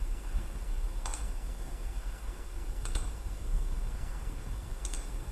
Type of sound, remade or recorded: remade